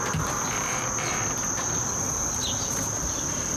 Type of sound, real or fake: real